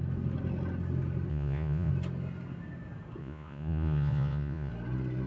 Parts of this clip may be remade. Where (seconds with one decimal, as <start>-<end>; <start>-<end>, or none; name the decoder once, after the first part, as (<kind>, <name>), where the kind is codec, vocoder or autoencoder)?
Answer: 1.3-1.9 (vocoder, Vocos); 3.2-4.7